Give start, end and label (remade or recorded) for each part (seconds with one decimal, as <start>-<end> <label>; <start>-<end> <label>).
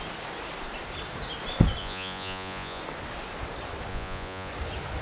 0.0-1.8 recorded; 1.8-2.8 remade; 2.8-3.9 recorded; 3.9-4.5 remade; 4.5-5.0 recorded